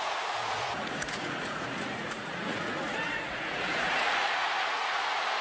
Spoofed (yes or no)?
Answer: yes